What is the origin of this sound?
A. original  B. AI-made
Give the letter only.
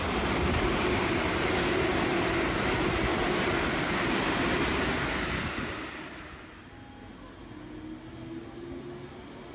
A